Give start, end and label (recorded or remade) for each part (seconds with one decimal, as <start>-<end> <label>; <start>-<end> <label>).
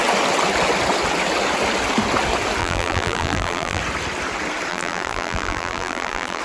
0.0-2.6 recorded; 2.6-3.8 remade; 3.8-4.7 recorded; 4.7-6.4 remade